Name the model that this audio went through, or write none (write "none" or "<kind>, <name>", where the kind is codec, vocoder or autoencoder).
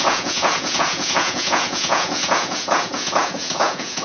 vocoder, Vocos